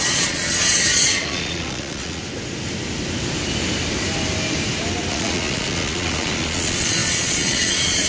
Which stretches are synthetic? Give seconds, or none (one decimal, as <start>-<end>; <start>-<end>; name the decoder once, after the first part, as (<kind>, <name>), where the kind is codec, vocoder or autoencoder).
0.0-2.2 (vocoder, Vocos); 5.1-8.1